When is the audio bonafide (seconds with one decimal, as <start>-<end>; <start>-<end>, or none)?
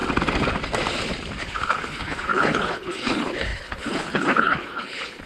0.0-1.4